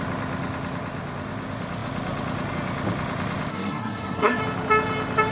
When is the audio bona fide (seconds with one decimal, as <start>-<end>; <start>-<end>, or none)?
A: 0.0-3.5; 4.4-5.3